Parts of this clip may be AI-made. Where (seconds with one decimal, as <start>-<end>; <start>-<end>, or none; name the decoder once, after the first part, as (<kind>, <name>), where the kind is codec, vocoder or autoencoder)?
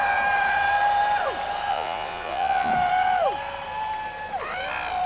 1.7-2.7 (vocoder, Vocos)